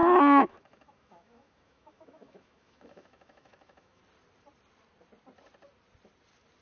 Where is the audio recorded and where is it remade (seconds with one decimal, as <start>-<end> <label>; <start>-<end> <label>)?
0.0-4.0 remade; 4.0-6.6 recorded